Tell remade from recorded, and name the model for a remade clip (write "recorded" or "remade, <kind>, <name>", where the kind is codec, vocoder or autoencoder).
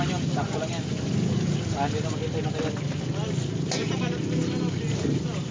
recorded